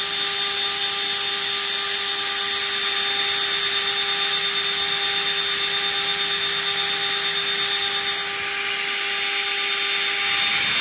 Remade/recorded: recorded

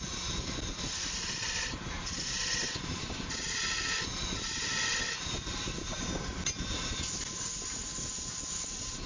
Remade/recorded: recorded